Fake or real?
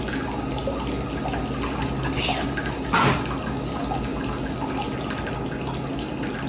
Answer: real